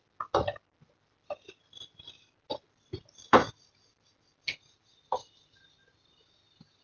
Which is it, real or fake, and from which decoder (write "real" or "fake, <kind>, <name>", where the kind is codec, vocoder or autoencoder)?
real